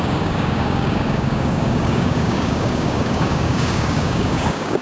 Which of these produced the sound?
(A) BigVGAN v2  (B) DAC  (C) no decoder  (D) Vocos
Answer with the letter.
B